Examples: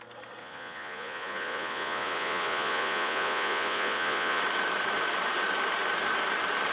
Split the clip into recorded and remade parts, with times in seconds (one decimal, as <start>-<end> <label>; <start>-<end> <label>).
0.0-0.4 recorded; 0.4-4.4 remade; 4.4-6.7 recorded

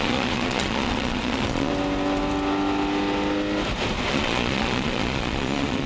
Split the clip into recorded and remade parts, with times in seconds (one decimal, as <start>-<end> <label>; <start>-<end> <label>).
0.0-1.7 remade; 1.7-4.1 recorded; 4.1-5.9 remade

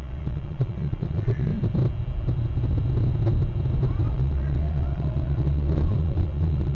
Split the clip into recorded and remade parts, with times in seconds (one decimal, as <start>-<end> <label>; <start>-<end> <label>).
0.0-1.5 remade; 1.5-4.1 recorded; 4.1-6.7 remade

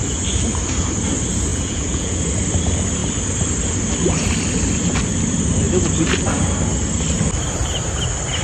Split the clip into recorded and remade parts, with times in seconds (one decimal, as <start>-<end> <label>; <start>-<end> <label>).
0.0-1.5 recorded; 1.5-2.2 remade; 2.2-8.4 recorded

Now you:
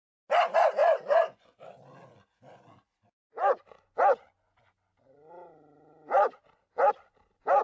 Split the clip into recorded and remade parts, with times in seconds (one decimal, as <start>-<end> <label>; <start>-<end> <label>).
0.0-0.8 recorded; 0.8-1.5 remade; 1.5-7.6 recorded